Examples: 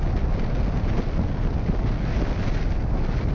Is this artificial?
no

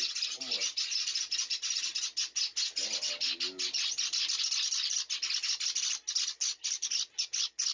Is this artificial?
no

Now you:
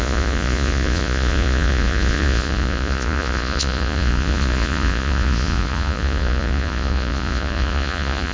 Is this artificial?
yes